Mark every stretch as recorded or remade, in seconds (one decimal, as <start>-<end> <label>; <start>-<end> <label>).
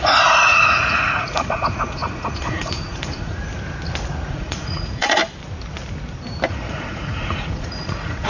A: 0.0-3.4 remade; 3.4-4.3 recorded; 4.3-5.2 remade; 5.2-6.5 recorded; 6.5-8.3 remade